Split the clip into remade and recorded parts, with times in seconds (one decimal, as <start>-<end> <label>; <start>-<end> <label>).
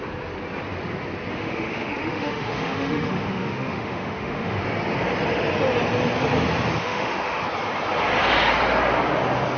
0.0-1.3 recorded; 1.3-4.6 remade; 4.6-6.8 recorded; 6.8-7.4 remade; 7.4-9.6 recorded